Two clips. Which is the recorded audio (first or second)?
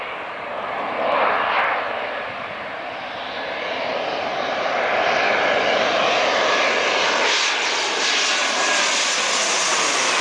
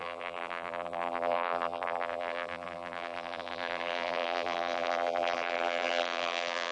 first